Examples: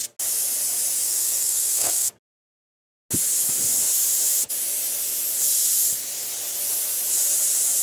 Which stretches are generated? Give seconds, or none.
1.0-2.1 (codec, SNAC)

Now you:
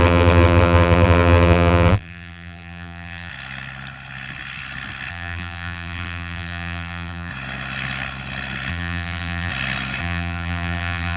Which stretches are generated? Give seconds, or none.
0.0-3.3 (vocoder, BigVGAN v2); 5.1-7.3; 8.7-9.5; 10.0-11.2

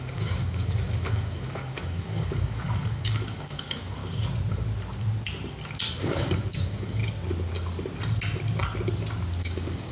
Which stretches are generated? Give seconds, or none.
0.0-4.0 (codec, DAC); 5.9-7.0; 9.4-9.9

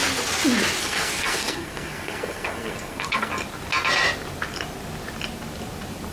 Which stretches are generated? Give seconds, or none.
0.8-3.3 (codec, SNAC)

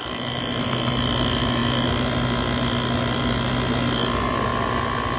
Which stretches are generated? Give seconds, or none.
none

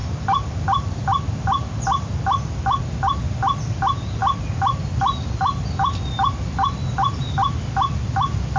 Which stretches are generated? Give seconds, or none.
4.2-5.7 (vocoder, BigVGAN v2)